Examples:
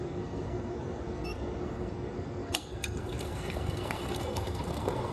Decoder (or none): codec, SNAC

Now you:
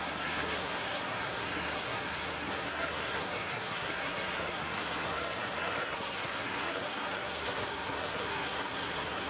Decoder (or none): codec, SNAC